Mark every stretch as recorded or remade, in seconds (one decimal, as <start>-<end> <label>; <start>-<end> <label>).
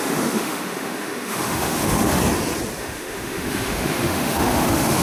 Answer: 0.0-2.2 remade; 2.2-2.8 recorded; 2.8-5.0 remade